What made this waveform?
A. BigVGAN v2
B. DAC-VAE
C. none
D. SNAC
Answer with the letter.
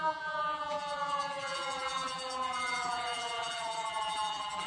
A